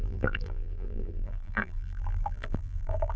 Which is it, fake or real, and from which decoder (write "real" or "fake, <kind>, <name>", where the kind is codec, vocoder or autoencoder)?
fake, vocoder, BigVGAN v2